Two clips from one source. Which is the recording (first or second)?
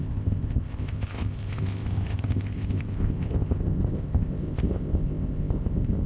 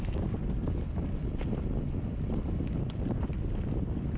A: second